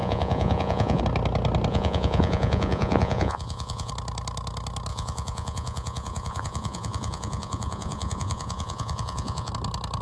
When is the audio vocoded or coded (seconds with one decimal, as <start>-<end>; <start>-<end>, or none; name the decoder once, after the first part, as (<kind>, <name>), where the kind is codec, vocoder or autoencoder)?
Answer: 0.0-1.0 (vocoder, Vocos); 1.7-3.9; 4.9-9.5